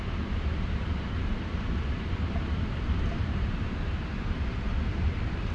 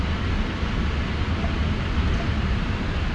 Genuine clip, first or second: second